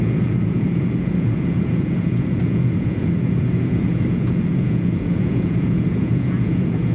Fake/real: fake